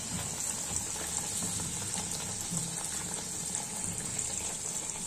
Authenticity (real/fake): real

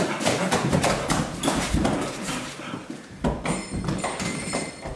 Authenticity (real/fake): real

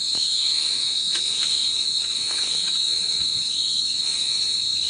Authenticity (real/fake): fake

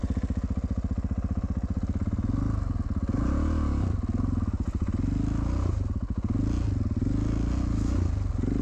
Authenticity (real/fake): real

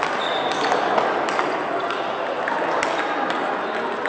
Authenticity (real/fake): real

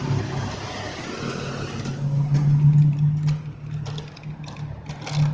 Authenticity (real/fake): real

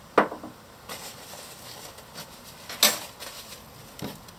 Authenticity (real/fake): real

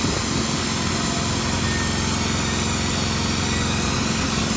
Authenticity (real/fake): real